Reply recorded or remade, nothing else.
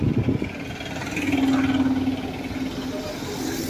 recorded